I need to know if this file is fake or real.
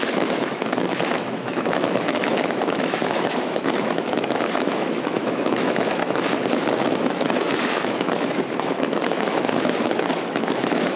fake